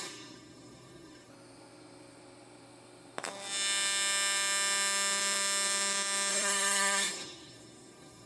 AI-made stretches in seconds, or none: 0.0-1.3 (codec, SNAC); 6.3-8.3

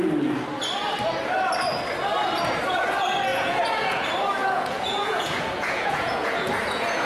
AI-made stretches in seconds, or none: 3.3-4.0 (vocoder, Vocos); 4.4-7.1

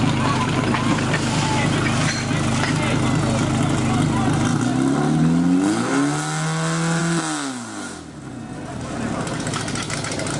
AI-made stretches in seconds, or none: none

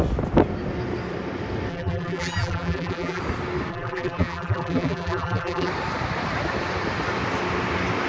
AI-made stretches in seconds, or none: 1.7-3.2 (vocoder, BigVGAN v2); 3.7-5.7

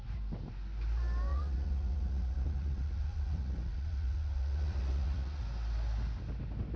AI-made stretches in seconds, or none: 1.3-5.4 (vocoder, Vocos)

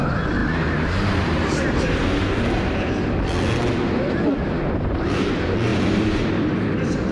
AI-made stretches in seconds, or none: none

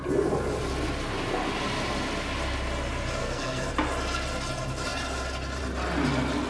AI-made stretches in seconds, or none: 3.2-3.7 (codec, SNAC)

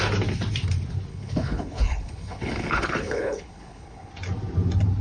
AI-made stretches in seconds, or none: 1.1-4.1 (codec, HILCodec)